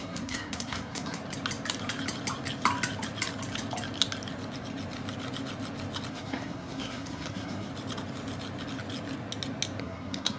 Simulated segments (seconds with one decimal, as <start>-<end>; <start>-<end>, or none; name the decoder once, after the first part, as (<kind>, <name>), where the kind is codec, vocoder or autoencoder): 0.0-1.2 (codec, SNAC); 6.1-7.7; 9.8-10.4